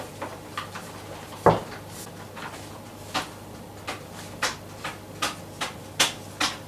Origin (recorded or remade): recorded